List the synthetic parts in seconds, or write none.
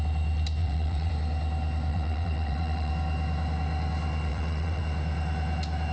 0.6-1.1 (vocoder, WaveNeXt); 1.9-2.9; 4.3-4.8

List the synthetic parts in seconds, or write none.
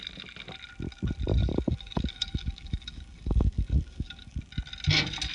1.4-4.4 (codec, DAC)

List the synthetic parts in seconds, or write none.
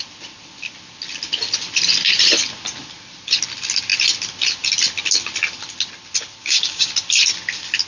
6.4-6.9 (codec, DAC)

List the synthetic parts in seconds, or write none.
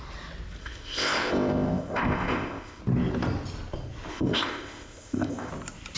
0.6-2.8 (codec, ZipCodec); 4.1-5.5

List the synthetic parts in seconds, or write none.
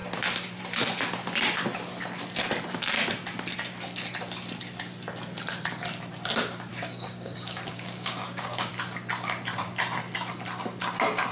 6.7-8.7 (codec, DAC)